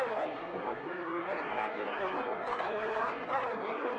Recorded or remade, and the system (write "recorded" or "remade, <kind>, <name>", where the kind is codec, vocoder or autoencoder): remade, codec, SNAC